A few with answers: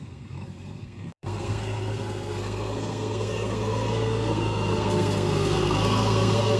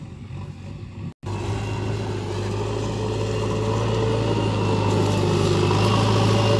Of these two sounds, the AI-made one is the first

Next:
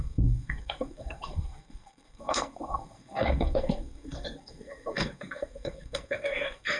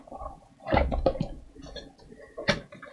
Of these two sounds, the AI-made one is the first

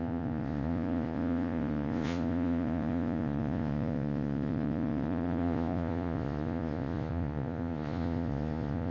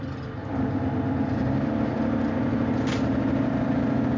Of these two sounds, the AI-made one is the first